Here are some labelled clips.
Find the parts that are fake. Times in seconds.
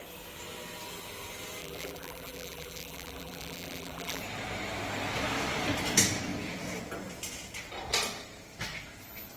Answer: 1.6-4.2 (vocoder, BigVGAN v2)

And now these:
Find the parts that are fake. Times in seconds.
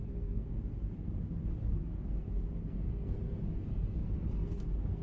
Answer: 0.0-5.0 (codec, SNAC)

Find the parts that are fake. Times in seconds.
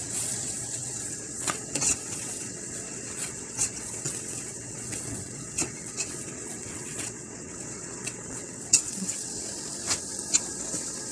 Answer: 0.0-9.5 (vocoder, WaveNeXt); 10.4-11.1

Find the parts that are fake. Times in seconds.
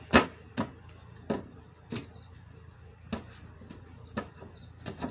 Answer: none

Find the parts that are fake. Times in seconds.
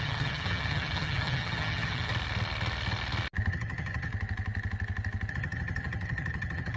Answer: 0.0-2.1 (vocoder, HiFi-GAN); 3.5-4.1; 5.3-6.8